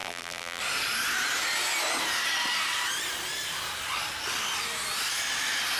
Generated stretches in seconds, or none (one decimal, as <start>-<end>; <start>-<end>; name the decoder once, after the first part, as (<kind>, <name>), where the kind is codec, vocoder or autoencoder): 0.0-0.6 (vocoder, BigVGAN v2)